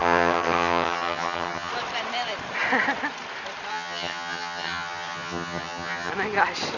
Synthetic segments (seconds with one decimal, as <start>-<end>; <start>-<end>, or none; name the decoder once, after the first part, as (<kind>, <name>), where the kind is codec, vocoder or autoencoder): 0.0-1.7 (vocoder, HiFi-GAN); 3.7-6.1